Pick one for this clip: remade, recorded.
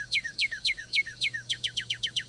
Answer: remade